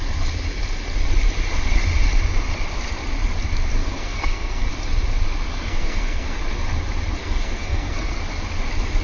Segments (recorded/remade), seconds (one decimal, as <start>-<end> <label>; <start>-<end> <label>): 0.0-3.8 recorded; 3.8-4.7 remade; 4.7-5.5 recorded; 5.5-6.4 remade; 6.4-7.2 recorded; 7.2-8.2 remade; 8.2-9.0 recorded